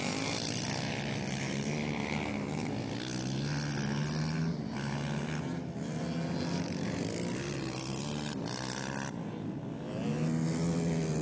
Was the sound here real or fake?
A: real